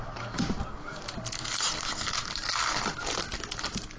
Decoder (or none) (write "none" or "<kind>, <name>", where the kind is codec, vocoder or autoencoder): none